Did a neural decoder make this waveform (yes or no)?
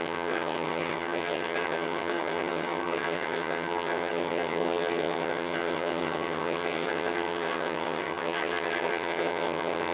yes